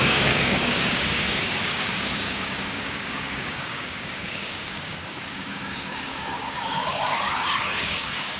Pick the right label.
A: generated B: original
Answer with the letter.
A